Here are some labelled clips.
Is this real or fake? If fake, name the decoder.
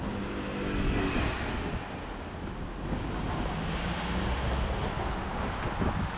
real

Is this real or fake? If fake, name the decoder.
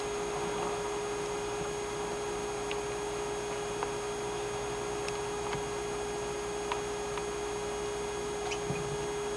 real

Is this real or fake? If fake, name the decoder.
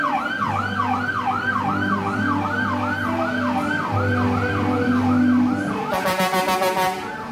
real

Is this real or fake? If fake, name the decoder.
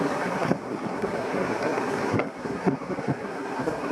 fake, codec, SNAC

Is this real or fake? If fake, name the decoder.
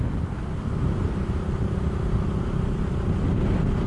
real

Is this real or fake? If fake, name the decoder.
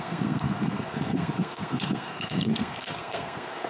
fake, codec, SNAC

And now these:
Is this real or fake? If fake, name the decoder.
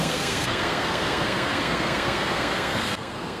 fake, codec, SNAC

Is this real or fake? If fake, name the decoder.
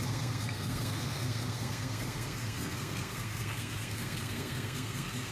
fake, codec, SNAC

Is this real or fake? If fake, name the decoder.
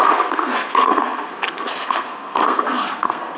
fake, codec, SNAC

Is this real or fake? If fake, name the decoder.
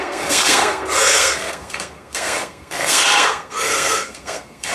fake, codec, SNAC